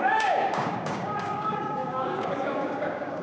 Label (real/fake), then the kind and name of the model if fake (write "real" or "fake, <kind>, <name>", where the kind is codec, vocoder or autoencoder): fake, codec, DAC